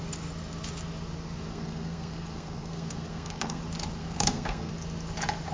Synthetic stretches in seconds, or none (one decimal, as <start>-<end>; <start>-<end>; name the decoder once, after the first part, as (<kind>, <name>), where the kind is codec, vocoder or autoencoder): 1.5-3.6 (codec, SNAC); 4.0-4.7